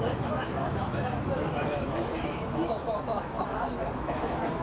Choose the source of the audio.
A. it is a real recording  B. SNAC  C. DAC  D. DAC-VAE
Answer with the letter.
D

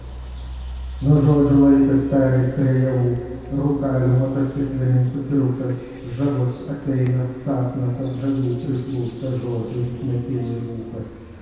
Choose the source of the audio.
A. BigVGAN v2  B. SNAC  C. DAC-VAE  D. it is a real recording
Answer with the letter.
D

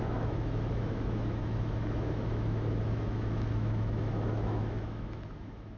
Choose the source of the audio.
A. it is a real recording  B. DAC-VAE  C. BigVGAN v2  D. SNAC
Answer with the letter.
B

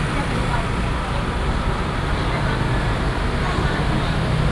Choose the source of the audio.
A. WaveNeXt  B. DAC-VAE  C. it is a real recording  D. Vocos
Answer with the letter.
C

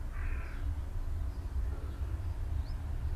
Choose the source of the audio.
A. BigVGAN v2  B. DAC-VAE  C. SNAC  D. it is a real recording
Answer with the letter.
D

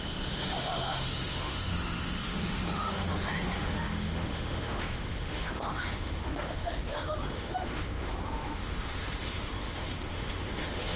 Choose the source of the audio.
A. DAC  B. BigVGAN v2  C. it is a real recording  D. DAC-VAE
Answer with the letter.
D